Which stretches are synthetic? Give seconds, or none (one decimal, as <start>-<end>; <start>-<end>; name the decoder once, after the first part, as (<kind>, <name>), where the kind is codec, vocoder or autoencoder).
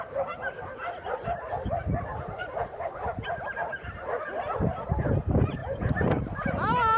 2.1-3.3 (vocoder, BigVGAN v2); 5.6-7.0